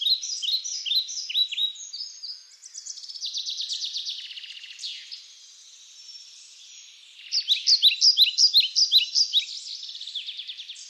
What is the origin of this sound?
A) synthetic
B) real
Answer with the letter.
B